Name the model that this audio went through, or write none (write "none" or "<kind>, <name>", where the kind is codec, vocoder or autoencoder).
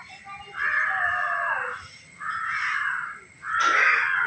none